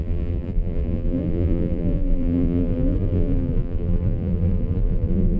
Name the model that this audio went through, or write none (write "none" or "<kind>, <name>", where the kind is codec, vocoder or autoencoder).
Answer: vocoder, BigVGAN v2